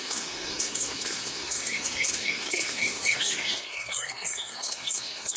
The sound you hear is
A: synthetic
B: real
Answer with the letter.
A